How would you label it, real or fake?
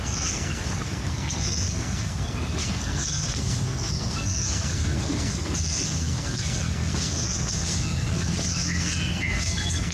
fake